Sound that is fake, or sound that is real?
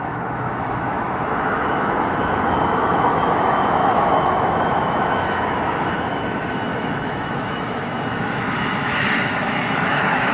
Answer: fake